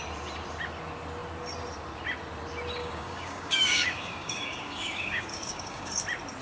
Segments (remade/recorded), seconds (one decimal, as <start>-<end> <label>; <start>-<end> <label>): 0.0-2.8 recorded; 2.8-5.9 remade; 5.9-6.4 recorded